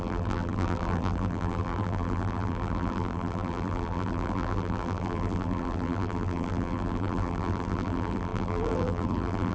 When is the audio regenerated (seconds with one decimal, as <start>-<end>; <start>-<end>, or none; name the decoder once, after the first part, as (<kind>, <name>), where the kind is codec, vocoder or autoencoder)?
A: 0.0-9.5 (vocoder, BigVGAN v2)